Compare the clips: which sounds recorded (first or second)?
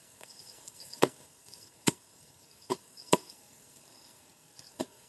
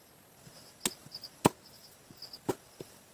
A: second